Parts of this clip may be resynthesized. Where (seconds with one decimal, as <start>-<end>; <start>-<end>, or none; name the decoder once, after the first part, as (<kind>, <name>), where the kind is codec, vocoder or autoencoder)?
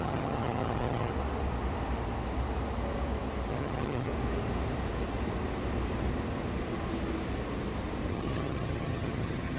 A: 0.0-1.1 (vocoder, HiFi-GAN); 3.5-4.1; 8.1-9.6